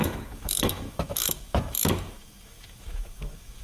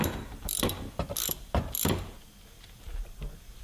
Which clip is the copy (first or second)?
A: first